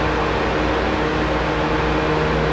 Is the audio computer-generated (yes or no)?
no